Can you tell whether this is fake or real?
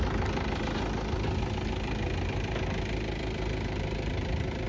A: real